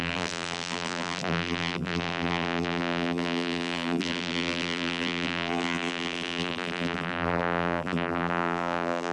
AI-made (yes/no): yes